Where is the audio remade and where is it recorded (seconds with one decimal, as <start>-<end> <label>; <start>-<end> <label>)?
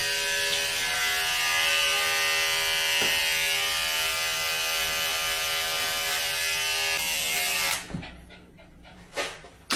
0.0-9.8 recorded